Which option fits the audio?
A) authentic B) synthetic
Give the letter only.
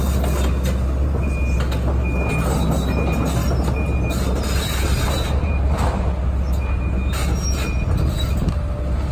A